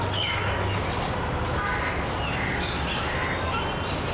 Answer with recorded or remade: recorded